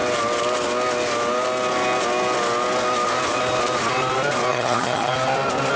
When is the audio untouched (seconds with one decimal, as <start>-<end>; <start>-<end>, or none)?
0.0-4.5; 5.1-5.8